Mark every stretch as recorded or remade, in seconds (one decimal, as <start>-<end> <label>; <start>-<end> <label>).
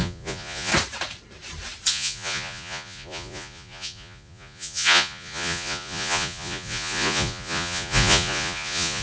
0.0-0.7 remade; 0.7-1.9 recorded; 1.9-9.0 remade